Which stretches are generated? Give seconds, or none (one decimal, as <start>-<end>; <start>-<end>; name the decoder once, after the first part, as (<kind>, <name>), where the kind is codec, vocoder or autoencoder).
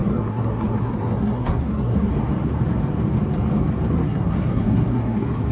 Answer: 0.0-2.1 (codec, SNAC); 3.9-5.5